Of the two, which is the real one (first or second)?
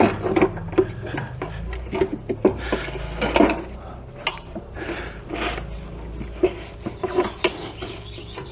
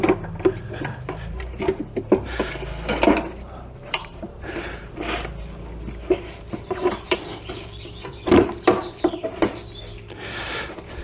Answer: first